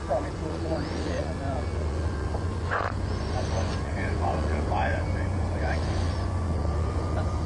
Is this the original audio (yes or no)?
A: no